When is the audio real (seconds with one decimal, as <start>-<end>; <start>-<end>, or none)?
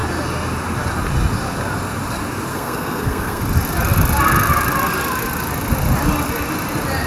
0.0-2.5; 3.4-7.1